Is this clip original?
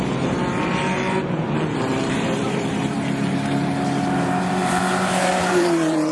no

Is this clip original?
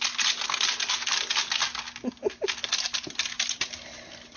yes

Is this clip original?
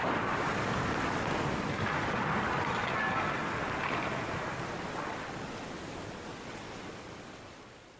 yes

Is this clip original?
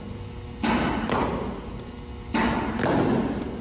yes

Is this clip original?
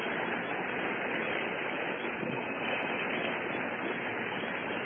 yes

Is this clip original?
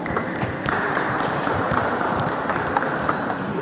no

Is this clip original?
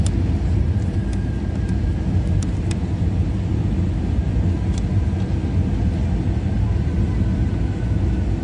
yes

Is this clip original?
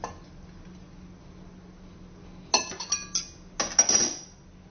yes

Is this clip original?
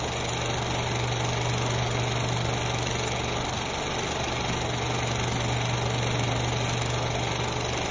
yes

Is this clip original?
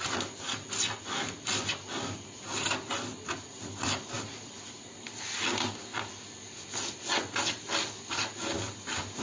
yes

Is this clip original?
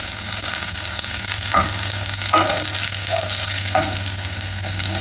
no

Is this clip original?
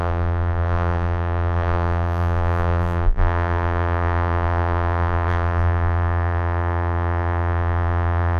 no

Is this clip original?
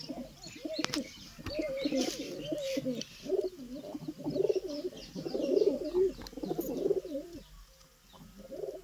yes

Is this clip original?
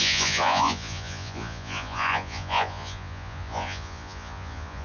no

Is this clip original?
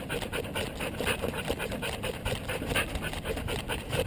yes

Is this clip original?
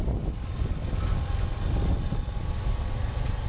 yes